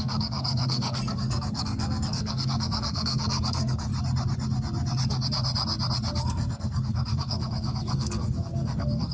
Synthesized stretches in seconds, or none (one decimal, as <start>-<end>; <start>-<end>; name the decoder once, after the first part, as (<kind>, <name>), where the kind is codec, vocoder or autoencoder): 0.0-3.9 (codec, SNAC); 6.2-9.1